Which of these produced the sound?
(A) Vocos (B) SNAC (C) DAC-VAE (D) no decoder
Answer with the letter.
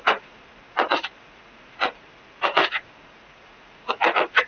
A